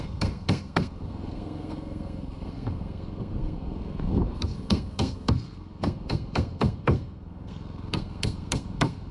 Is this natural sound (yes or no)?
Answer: no